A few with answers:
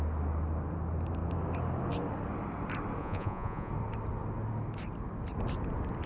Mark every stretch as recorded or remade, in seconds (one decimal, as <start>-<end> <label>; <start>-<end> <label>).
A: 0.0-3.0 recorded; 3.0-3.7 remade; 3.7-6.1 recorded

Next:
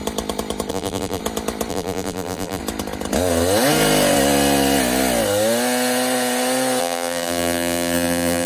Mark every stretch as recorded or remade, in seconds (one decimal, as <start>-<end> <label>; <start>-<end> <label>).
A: 0.0-0.7 recorded; 0.7-1.2 remade; 1.2-1.7 recorded; 1.7-2.6 remade; 2.6-6.8 recorded; 6.8-8.5 remade

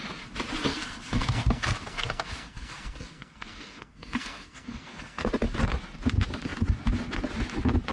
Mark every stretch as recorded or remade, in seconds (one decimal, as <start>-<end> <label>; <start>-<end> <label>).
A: 0.0-0.7 recorded; 0.7-5.3 remade; 5.3-7.9 recorded